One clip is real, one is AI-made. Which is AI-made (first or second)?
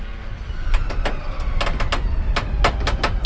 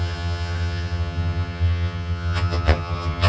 second